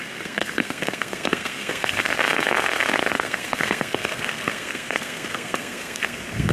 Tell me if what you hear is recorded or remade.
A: remade